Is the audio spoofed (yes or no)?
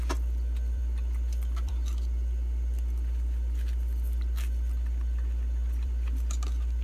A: no